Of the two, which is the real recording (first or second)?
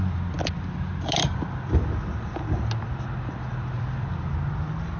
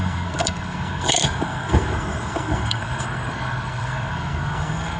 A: first